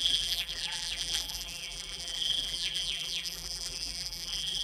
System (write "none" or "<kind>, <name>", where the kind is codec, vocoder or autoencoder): vocoder, BigVGAN v2